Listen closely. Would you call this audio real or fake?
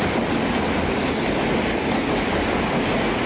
real